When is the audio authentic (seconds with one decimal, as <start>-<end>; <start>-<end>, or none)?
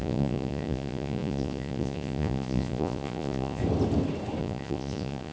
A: 3.6-4.4